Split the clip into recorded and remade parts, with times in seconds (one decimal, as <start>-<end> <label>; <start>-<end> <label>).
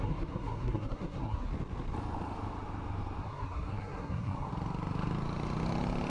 0.0-1.5 remade; 1.5-3.2 recorded; 3.2-4.5 remade; 4.5-6.1 recorded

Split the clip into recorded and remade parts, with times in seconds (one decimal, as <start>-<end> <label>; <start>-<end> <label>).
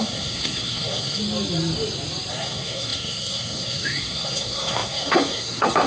0.0-1.2 remade; 1.2-2.3 recorded; 2.3-5.9 remade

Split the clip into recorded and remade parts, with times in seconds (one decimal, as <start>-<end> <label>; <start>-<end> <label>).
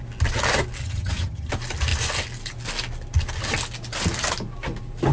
0.0-0.8 recorded; 0.8-1.5 remade; 1.5-5.1 recorded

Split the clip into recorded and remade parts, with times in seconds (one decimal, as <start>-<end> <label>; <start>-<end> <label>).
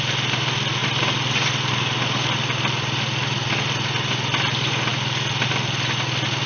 0.0-6.5 recorded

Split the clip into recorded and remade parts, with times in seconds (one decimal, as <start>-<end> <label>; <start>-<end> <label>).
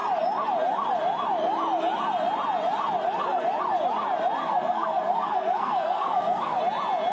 0.0-4.4 recorded; 4.4-6.6 remade; 6.6-7.1 recorded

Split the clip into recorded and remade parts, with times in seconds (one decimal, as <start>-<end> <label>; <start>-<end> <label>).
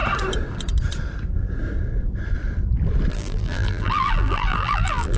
0.0-3.1 recorded; 3.1-5.2 remade